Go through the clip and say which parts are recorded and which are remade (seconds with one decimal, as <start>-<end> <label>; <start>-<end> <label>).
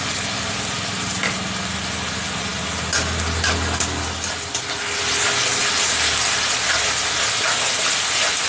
0.0-8.5 recorded